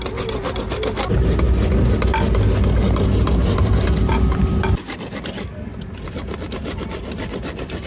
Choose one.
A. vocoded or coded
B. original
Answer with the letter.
B